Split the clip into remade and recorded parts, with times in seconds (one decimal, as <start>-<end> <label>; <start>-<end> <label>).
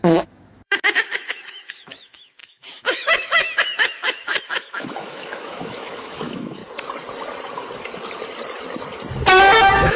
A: 0.0-6.6 remade; 6.6-9.6 recorded; 9.6-10.0 remade